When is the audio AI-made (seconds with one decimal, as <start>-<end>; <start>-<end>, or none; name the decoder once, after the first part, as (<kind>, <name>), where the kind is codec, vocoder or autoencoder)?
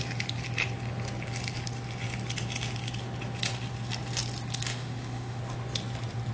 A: 4.7-5.4 (autoencoder, DAC-VAE)